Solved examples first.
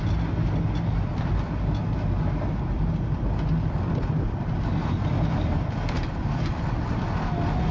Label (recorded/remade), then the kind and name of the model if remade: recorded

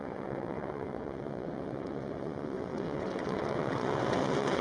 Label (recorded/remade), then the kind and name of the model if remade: remade, vocoder, WaveNeXt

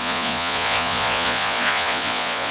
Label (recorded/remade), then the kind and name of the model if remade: remade, vocoder, Vocos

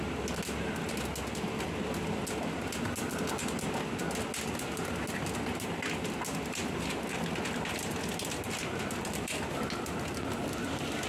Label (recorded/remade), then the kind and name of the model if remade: recorded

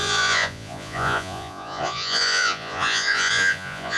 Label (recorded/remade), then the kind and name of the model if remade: remade, vocoder, Vocos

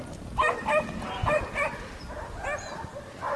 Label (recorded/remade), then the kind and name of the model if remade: recorded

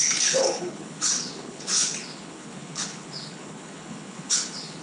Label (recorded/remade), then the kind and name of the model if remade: remade, codec, HILCodec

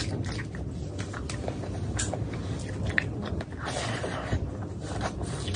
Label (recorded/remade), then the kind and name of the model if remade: recorded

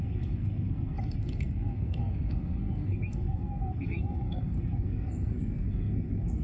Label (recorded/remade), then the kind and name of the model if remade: remade, codec, SNAC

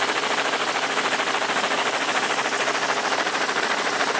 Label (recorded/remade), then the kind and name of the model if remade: remade, vocoder, BigVGAN v2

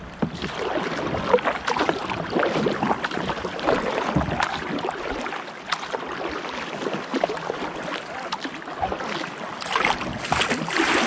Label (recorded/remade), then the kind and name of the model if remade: recorded